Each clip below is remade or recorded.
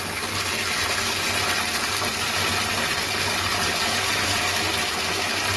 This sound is recorded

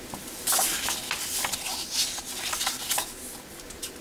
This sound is recorded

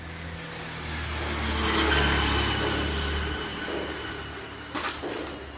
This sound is recorded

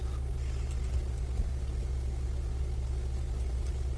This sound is recorded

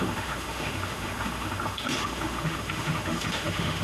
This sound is remade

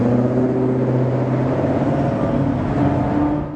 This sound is recorded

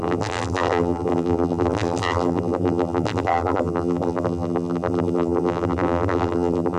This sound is remade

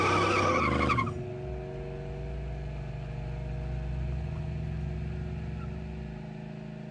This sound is recorded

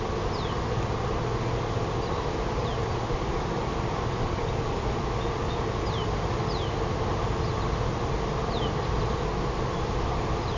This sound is recorded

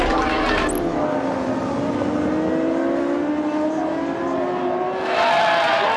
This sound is recorded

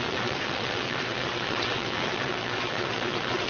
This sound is remade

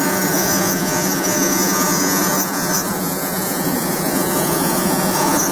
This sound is remade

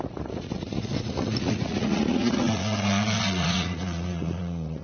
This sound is remade